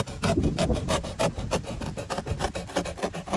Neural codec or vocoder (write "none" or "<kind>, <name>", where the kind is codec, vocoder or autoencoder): none